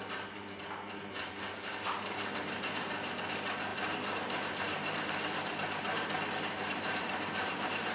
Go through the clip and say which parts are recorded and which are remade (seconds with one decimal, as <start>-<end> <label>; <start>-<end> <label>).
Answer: 0.0-7.9 remade